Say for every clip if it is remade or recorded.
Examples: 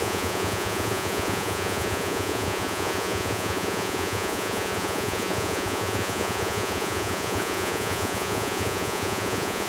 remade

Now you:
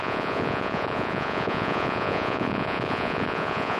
remade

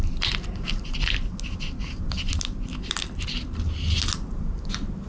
recorded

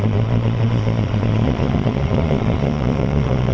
remade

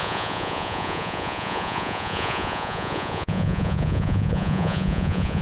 remade